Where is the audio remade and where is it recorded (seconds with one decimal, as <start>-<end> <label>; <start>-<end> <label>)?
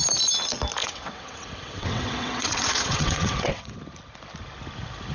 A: 0.0-0.8 recorded; 0.8-3.8 remade; 3.8-5.1 recorded